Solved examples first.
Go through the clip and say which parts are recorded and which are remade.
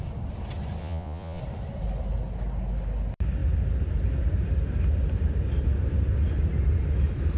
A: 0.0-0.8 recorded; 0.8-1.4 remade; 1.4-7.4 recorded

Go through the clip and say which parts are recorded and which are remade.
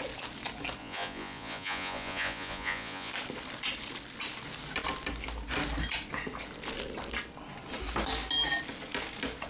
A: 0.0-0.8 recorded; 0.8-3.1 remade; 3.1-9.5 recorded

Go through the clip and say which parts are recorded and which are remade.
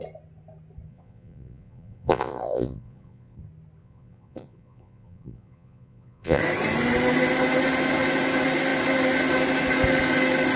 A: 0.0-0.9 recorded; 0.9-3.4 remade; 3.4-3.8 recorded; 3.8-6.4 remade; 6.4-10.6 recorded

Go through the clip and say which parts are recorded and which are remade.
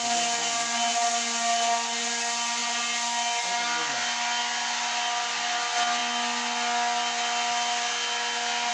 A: 0.0-8.7 recorded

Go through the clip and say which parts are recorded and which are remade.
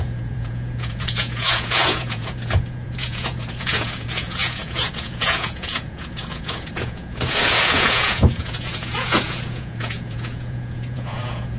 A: 0.0-11.6 remade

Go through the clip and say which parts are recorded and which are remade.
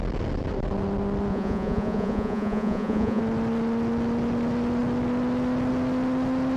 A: 0.0-1.3 recorded; 1.3-3.2 remade; 3.2-6.6 recorded